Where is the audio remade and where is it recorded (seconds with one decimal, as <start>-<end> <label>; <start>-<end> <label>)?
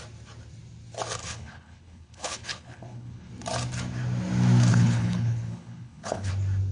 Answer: 0.0-1.2 recorded; 1.2-3.3 remade; 3.3-4.7 recorded; 4.7-6.3 remade; 6.3-6.7 recorded